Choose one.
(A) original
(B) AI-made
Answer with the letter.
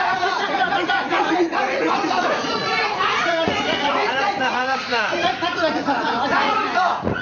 B